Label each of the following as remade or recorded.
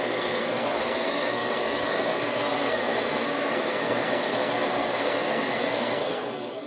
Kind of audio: remade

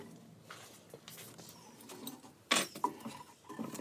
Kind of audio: recorded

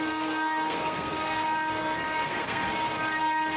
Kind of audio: remade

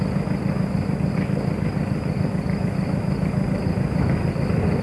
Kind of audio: recorded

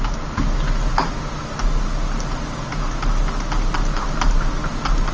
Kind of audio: recorded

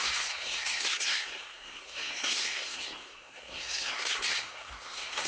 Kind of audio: remade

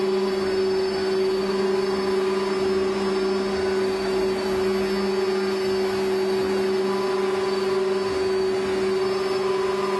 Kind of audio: recorded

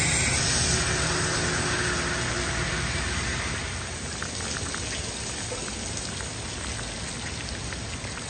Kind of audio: recorded